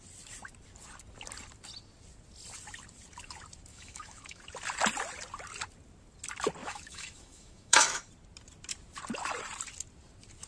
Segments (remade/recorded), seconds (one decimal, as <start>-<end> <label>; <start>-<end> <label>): 0.0-3.7 recorded; 3.7-4.4 remade; 4.4-6.6 recorded; 6.6-8.1 remade; 8.1-10.5 recorded